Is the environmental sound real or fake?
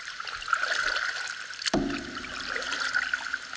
real